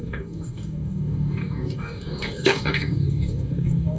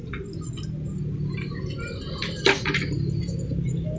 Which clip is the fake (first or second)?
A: first